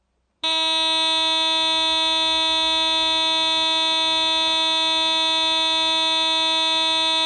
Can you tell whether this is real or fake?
real